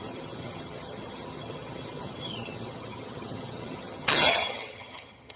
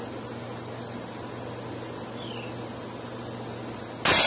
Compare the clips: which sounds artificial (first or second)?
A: first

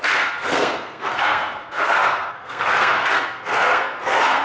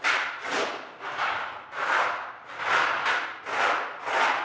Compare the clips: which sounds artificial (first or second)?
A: first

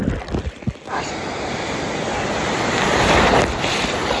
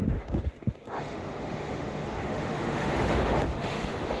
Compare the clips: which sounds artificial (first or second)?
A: second